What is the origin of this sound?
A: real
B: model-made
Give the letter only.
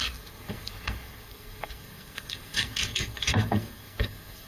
B